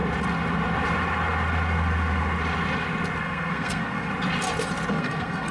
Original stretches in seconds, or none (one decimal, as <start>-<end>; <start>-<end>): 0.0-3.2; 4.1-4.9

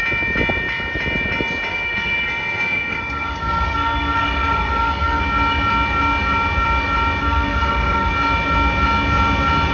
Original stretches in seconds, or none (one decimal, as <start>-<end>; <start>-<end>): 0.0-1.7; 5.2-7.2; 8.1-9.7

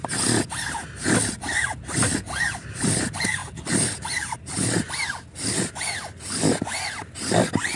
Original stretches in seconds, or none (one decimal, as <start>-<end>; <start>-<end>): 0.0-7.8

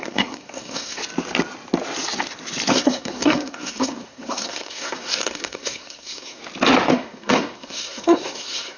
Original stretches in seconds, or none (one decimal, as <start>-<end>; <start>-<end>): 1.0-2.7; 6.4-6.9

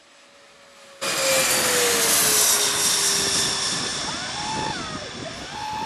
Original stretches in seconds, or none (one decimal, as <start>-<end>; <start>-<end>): 0.0-5.9

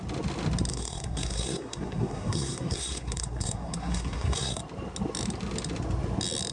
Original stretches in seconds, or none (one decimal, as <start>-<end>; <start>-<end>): 0.0-0.7; 4.6-6.5